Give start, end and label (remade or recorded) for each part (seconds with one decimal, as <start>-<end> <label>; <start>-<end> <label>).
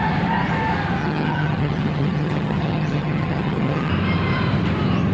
0.0-1.0 recorded; 1.0-3.9 remade; 3.9-5.1 recorded